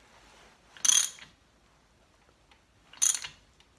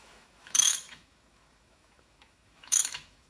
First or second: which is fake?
second